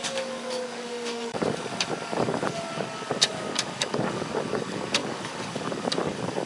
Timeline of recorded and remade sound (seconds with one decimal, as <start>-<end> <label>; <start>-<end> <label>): 0.0-6.5 remade

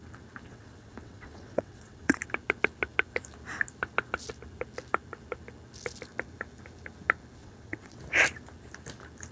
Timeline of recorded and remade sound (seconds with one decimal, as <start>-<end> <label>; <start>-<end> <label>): 0.0-0.5 recorded; 0.5-2.2 remade; 2.2-7.4 recorded; 7.4-8.0 remade; 8.0-9.3 recorded